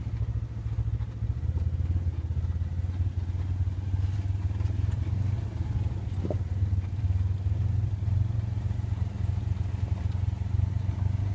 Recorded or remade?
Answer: recorded